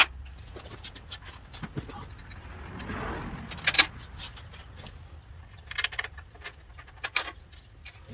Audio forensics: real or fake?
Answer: real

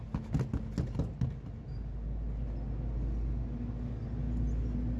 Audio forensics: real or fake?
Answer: real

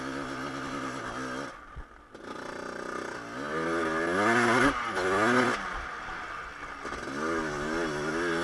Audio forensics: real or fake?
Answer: real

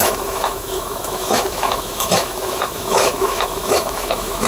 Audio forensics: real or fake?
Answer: fake